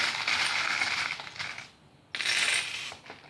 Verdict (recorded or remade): recorded